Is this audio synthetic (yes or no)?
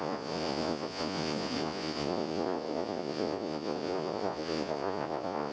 yes